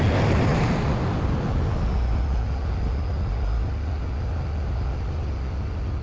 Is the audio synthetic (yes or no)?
no